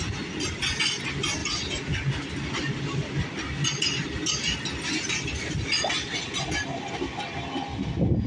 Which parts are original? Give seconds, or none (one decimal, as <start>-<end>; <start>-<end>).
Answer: 0.0-8.3